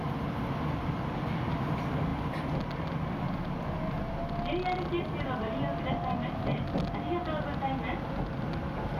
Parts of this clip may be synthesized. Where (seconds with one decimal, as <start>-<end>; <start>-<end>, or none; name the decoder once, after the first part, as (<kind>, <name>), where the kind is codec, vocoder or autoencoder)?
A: none